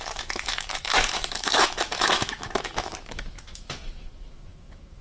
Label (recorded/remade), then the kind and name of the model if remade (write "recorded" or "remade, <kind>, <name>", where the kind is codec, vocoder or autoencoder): remade, autoencoder, DAC-VAE